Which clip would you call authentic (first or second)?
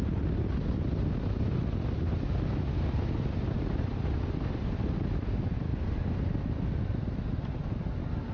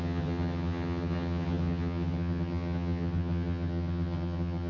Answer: first